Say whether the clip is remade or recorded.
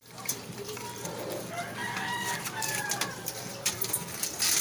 remade